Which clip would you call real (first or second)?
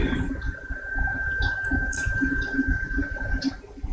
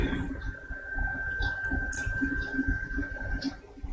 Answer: second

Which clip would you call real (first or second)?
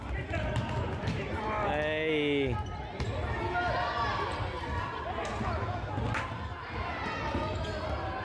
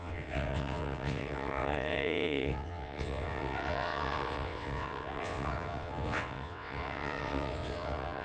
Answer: first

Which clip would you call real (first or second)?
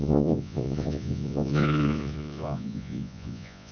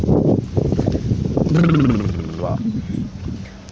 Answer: second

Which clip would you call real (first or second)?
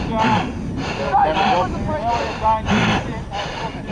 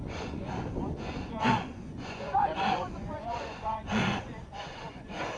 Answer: first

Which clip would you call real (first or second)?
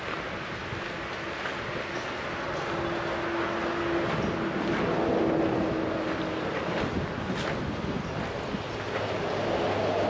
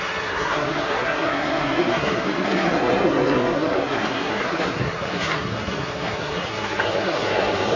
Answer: first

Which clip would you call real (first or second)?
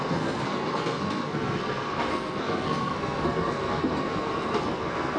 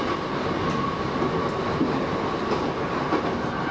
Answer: second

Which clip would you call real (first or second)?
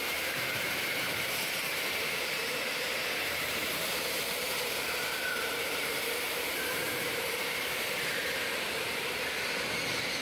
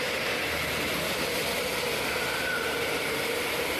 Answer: second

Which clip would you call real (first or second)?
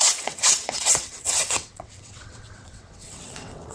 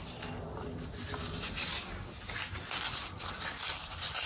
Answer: second